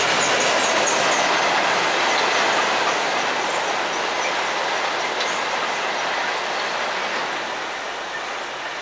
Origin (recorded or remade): recorded